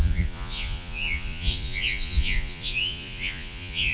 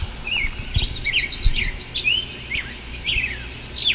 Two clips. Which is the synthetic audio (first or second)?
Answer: first